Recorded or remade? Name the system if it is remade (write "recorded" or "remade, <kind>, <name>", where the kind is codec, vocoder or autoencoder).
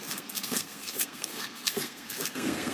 remade, codec, SNAC